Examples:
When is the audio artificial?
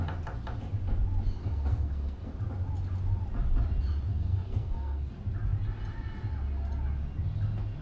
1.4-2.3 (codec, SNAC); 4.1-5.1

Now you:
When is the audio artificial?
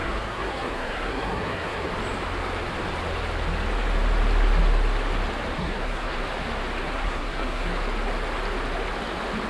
0.0-1.9 (codec, SNAC); 5.6-6.2; 6.8-7.7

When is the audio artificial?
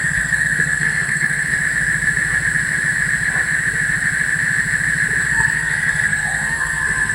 0.0-1.5 (codec, SNAC); 5.2-7.1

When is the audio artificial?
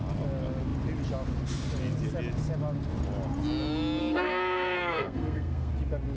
4.0-5.7 (codec, SNAC)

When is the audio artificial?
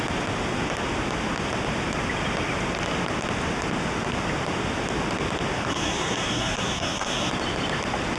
5.7-7.3 (codec, SNAC)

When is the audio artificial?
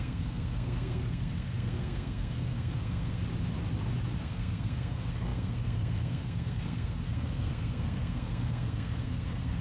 0.0-3.2 (codec, SNAC); 4.2-9.6